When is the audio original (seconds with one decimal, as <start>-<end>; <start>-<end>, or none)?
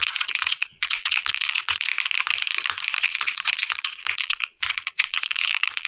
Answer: 1.9-3.0